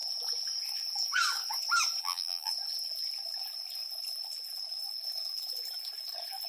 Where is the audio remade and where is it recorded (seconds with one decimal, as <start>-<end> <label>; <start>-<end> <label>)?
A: 0.0-2.0 recorded; 2.0-2.5 remade; 2.5-6.5 recorded